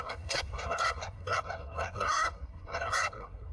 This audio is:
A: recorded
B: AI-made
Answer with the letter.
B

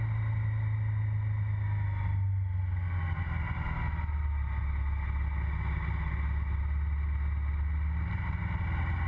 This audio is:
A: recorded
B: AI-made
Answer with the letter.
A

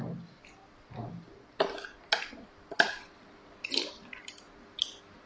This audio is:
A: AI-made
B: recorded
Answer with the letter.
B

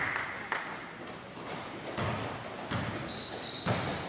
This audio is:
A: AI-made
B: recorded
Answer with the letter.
B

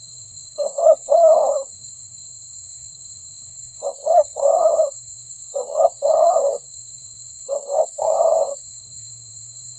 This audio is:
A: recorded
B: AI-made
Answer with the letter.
B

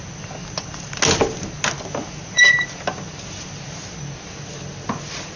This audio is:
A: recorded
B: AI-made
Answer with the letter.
A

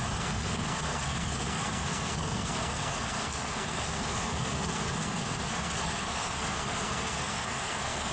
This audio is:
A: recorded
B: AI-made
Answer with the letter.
B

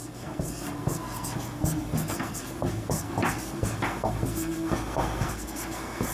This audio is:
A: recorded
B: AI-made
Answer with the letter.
B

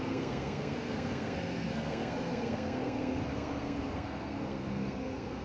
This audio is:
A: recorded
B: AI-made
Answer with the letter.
B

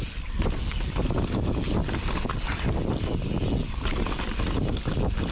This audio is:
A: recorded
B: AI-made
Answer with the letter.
A